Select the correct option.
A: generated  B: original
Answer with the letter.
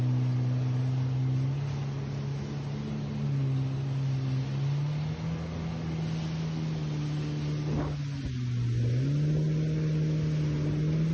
B